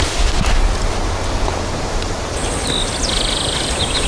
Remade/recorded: recorded